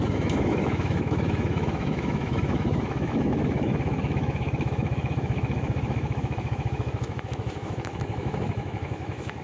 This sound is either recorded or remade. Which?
remade